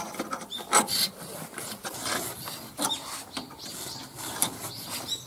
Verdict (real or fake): real